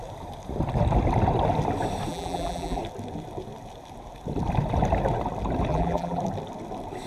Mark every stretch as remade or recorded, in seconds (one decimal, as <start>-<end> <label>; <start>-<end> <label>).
0.0-2.1 recorded; 2.1-2.8 remade; 2.8-5.7 recorded; 5.7-6.2 remade; 6.2-7.1 recorded